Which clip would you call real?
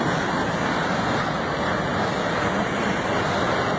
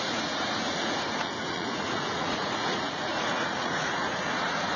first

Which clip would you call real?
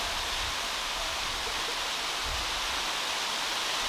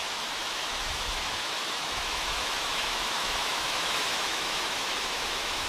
first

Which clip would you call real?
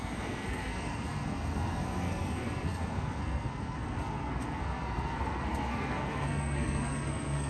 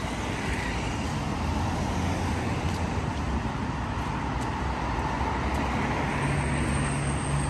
second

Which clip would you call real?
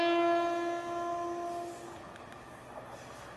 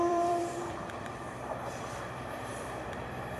first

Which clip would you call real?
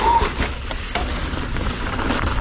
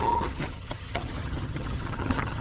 first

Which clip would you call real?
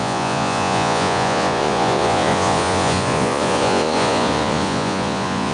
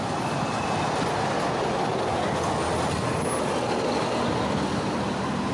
second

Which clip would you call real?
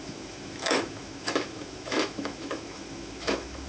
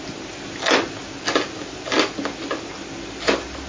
second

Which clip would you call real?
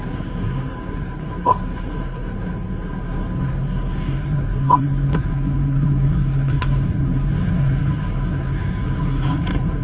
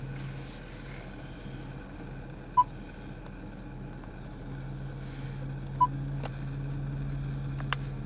second